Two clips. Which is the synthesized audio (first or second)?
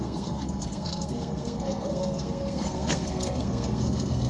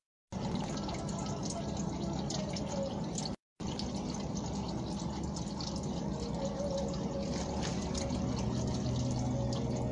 first